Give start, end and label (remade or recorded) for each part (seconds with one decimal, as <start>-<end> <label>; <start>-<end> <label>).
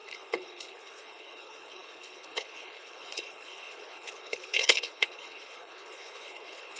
0.0-6.8 remade